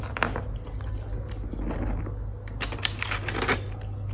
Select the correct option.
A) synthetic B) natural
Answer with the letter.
B